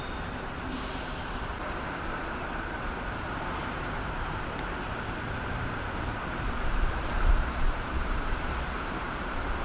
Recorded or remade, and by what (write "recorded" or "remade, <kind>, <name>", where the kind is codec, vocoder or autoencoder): remade, vocoder, BigVGAN v2